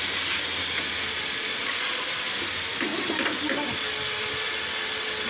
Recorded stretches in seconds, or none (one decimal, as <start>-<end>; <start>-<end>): 0.0-1.5; 2.0-5.3